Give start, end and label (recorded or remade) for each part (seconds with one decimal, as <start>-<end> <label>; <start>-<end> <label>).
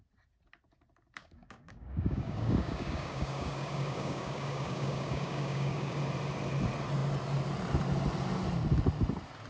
0.0-1.2 recorded; 1.2-6.0 remade; 6.0-9.5 recorded